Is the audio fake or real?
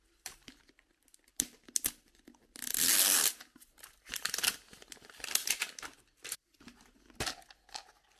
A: real